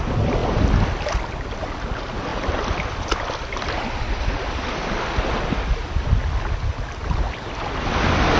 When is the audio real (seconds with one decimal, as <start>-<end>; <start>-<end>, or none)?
0.0-2.3; 4.8-8.4